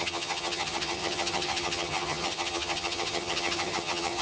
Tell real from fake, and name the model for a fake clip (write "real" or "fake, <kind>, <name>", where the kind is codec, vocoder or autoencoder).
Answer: fake, vocoder, HiFi-GAN